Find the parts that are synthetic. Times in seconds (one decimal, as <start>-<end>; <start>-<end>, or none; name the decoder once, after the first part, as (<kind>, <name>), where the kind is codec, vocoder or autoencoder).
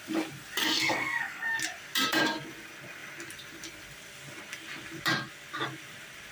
0.6-1.6 (codec, SNAC)